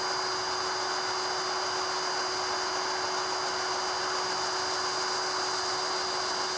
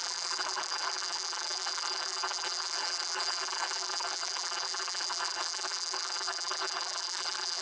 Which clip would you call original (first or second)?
first